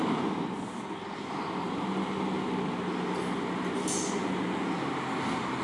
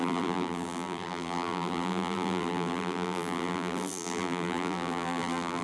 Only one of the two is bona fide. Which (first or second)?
first